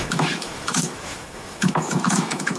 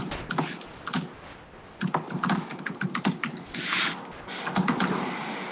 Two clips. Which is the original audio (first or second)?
second